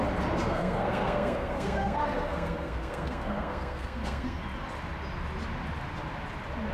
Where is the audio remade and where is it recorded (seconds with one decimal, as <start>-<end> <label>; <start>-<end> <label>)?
0.0-0.4 recorded; 0.4-4.4 remade; 4.4-6.7 recorded